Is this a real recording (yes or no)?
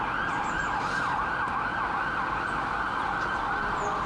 yes